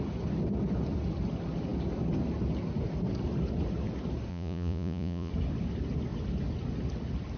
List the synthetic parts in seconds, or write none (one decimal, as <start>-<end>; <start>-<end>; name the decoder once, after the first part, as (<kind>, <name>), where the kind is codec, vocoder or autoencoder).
4.3-5.3 (vocoder, Vocos)